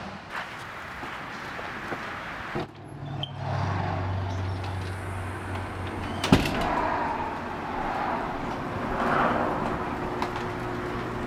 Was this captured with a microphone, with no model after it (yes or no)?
yes